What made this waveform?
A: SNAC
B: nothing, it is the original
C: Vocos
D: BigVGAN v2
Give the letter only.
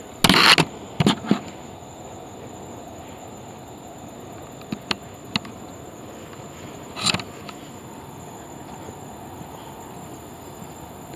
B